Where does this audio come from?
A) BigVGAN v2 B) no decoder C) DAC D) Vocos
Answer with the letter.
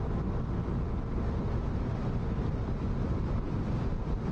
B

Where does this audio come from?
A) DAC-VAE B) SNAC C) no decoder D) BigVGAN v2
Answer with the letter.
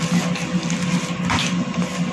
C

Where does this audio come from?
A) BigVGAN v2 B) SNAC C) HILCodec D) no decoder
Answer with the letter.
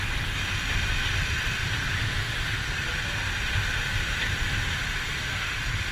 A